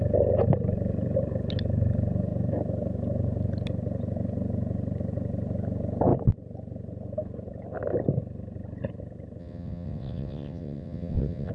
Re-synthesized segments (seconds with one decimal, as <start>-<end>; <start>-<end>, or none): 9.4-11.5